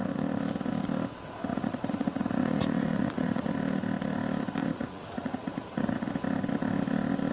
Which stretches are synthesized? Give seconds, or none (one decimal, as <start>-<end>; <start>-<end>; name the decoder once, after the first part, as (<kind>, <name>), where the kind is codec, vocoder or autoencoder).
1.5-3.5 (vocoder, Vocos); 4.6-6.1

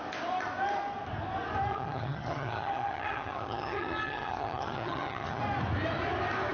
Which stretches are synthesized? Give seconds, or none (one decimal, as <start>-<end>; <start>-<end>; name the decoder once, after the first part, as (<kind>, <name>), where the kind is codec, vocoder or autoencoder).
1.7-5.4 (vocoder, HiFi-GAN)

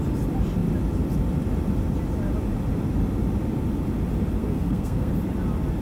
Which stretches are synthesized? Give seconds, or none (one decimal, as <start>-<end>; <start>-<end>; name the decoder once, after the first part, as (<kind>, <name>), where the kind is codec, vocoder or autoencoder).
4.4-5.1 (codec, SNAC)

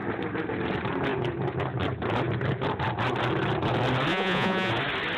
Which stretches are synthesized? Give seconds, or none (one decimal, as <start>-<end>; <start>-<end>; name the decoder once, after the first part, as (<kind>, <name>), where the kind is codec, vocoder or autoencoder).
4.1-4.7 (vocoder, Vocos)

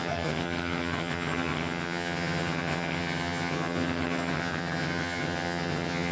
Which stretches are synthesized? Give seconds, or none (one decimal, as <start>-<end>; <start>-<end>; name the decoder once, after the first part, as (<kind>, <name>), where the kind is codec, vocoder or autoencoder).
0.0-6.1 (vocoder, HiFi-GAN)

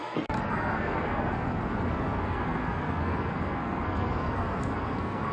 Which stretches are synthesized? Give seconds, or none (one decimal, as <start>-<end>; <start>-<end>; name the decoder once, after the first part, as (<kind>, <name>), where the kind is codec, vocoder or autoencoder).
0.0-5.3 (codec, SNAC)

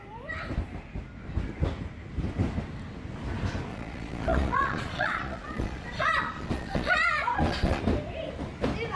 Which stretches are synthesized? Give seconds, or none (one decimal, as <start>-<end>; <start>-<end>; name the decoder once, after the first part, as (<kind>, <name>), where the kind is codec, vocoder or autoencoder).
3.7-7.8 (vocoder, Vocos)

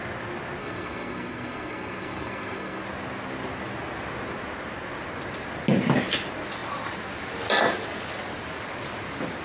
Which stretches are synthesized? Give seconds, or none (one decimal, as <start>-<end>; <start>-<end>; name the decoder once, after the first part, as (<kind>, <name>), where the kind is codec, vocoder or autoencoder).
0.6-2.8 (codec, SNAC)